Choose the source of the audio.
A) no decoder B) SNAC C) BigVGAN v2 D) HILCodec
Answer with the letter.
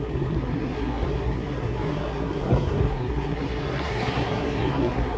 B